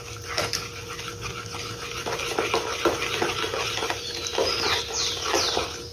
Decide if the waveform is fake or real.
real